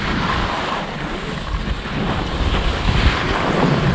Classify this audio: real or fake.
fake